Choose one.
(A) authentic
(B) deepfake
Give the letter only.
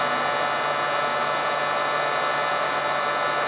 A